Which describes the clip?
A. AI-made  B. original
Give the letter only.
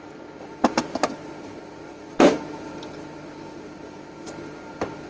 B